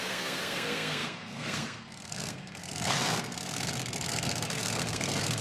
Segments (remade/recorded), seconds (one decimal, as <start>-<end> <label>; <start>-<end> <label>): 0.0-5.4 remade